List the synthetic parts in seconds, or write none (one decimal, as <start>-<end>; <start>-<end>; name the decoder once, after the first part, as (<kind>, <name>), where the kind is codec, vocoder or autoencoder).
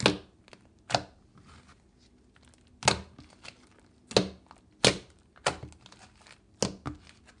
none